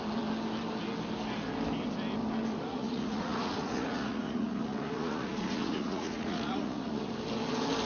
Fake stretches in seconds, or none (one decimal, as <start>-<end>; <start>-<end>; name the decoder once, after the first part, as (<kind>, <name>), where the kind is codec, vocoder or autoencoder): 2.7-7.1 (vocoder, Vocos)